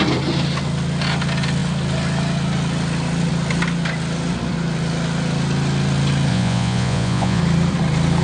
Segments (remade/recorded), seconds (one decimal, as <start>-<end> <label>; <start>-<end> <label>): 0.0-6.3 recorded; 6.3-7.4 remade; 7.4-8.2 recorded